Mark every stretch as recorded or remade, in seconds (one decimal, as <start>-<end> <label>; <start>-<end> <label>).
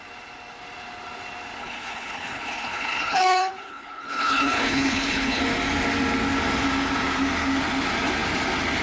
0.0-1.6 recorded; 1.6-5.4 remade; 5.4-8.8 recorded